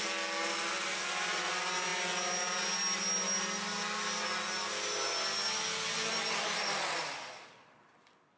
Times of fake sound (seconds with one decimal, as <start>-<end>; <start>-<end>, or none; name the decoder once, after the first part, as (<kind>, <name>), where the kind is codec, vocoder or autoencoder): none